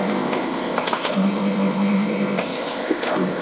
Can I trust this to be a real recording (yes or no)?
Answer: no